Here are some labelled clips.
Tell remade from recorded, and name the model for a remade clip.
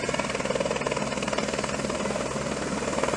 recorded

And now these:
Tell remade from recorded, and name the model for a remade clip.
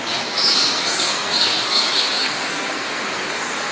remade, codec, SNAC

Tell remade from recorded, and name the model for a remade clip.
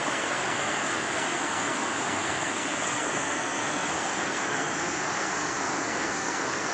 remade, codec, SNAC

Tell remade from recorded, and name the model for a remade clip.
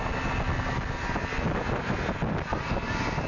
recorded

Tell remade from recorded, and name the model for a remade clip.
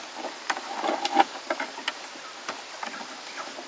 recorded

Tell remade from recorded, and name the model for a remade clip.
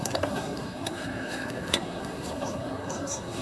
remade, codec, SNAC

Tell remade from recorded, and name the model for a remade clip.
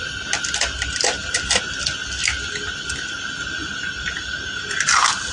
recorded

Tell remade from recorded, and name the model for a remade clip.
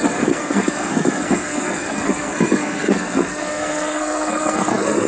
remade, codec, SNAC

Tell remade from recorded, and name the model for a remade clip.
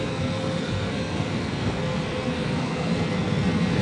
remade, codec, SNAC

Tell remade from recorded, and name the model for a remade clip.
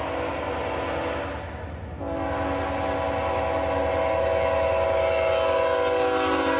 recorded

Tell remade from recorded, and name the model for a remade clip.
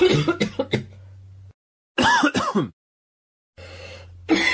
recorded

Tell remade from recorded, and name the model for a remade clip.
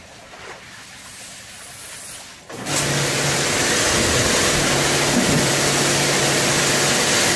recorded